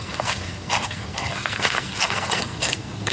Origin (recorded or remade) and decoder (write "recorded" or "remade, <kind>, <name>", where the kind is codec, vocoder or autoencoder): remade, codec, SNAC